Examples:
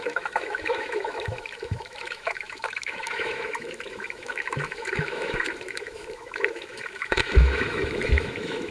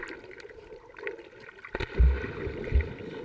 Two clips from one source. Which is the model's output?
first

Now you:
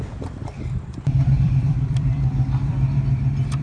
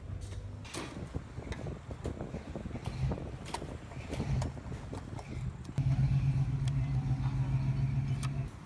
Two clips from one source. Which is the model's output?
first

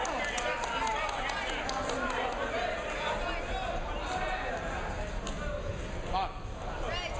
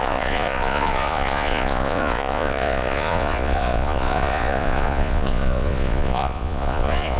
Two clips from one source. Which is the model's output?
second